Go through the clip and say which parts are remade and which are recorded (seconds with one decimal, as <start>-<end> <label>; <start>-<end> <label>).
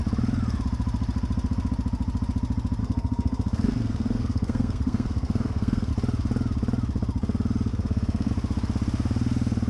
0.0-2.8 recorded; 2.8-5.9 remade; 5.9-7.7 recorded; 7.7-8.3 remade; 8.3-9.7 recorded